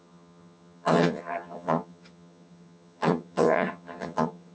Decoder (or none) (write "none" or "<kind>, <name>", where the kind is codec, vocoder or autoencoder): vocoder, HiFi-GAN